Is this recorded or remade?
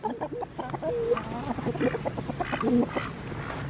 recorded